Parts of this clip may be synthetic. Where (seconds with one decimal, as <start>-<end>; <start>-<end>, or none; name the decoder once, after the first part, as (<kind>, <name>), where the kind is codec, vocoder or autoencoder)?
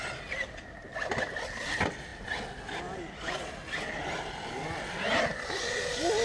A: none